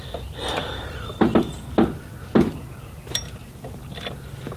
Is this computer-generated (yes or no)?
no